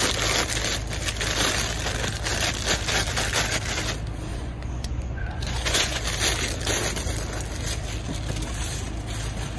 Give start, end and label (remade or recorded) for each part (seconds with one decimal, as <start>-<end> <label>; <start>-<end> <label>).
0.0-4.3 recorded; 4.3-6.0 remade; 6.0-9.6 recorded